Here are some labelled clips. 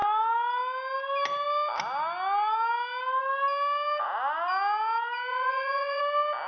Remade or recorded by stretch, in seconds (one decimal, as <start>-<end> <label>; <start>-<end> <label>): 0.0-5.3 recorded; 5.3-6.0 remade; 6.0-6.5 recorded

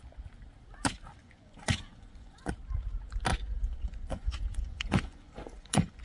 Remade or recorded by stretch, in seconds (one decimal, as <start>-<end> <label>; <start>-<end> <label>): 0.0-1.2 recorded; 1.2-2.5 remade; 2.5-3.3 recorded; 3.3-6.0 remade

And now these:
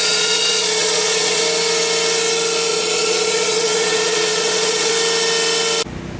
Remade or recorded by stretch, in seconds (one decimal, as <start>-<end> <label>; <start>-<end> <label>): 0.0-1.4 remade; 1.4-2.7 recorded; 2.7-4.9 remade; 4.9-6.2 recorded

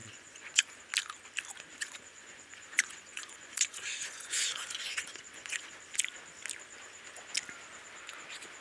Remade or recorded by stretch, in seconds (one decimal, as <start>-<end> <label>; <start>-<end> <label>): 0.0-0.8 remade; 0.8-1.7 recorded; 1.7-5.7 remade; 5.7-8.6 recorded

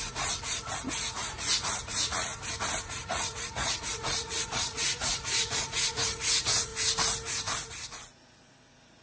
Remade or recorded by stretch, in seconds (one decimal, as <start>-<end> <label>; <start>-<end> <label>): 0.0-2.3 remade; 2.3-2.8 recorded; 2.8-6.7 remade; 6.7-7.7 recorded; 7.7-9.0 remade

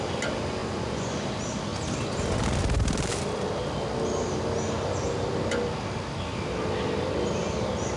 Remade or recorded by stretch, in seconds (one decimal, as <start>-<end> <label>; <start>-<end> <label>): 0.0-0.6 recorded; 0.6-1.2 remade; 1.2-8.0 recorded

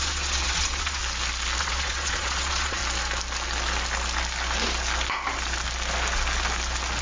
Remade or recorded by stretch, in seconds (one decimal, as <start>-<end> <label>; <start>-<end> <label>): 0.0-1.0 remade; 1.0-1.6 recorded; 1.6-2.8 remade; 2.8-7.0 recorded